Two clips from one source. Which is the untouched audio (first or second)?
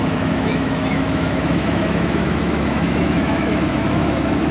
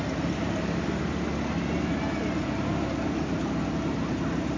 second